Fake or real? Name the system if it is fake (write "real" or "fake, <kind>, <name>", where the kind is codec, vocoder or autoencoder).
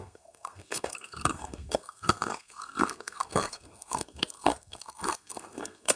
fake, codec, SNAC